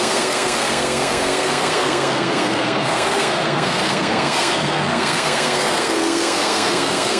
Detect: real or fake fake